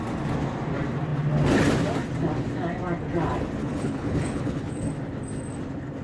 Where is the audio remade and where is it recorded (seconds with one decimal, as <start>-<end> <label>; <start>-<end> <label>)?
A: 0.0-3.6 recorded; 3.6-4.9 remade; 4.9-6.0 recorded